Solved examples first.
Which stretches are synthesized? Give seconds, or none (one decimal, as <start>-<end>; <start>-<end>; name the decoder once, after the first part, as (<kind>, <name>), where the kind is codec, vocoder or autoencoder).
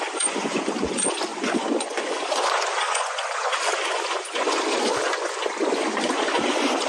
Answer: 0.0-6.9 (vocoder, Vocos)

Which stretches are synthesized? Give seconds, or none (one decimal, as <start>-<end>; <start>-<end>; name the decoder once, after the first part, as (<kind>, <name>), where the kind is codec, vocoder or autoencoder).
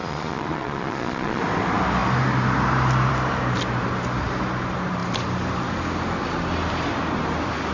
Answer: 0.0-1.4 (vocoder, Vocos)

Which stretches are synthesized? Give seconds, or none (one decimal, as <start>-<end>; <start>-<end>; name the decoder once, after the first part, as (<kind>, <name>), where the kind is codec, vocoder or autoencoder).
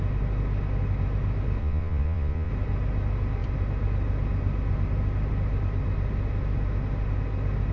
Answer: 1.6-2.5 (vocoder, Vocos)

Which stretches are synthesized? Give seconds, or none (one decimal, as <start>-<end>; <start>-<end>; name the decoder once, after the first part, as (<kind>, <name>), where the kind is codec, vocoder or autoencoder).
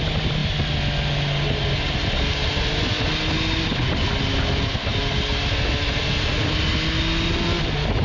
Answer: none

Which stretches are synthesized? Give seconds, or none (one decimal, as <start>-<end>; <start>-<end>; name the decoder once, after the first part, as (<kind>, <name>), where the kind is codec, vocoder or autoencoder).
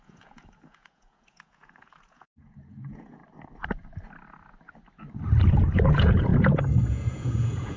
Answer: 0.0-3.2 (vocoder, Vocos); 5.5-6.3; 6.9-7.8